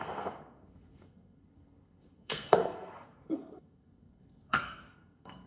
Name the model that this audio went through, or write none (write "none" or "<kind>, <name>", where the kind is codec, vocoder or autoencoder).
codec, SNAC